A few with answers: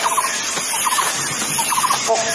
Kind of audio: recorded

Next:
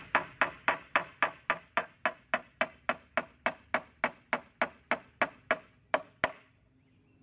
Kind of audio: recorded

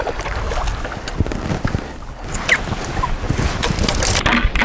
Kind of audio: recorded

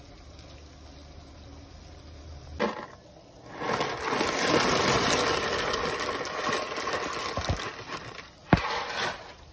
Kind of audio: recorded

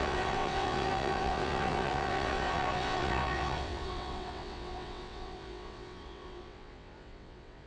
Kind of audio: remade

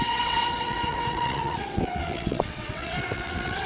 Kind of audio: remade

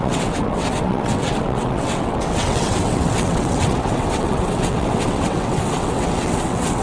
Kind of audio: remade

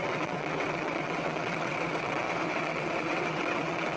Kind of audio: remade